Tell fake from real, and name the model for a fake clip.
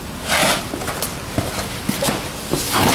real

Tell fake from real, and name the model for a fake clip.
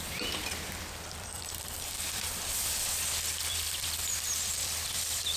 fake, vocoder, BigVGAN v2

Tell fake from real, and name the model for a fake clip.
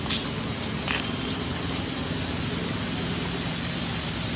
real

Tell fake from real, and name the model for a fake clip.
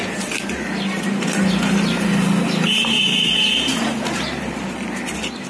fake, vocoder, BigVGAN v2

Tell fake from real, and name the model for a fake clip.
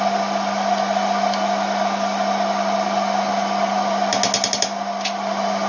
real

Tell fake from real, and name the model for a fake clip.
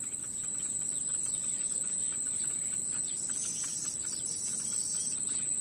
real